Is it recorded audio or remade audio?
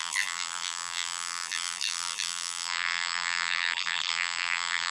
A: remade